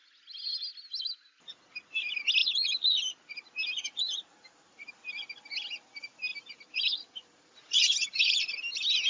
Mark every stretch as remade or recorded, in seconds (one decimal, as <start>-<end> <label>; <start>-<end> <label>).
0.0-2.4 recorded; 2.4-5.1 remade; 5.1-6.3 recorded; 6.3-8.5 remade; 8.5-9.1 recorded